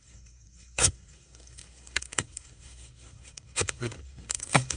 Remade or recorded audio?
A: remade